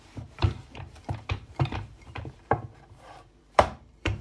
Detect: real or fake fake